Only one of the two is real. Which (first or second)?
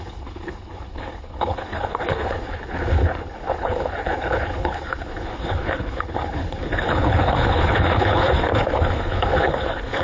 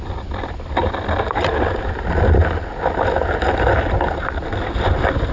second